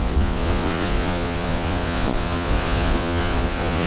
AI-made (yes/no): yes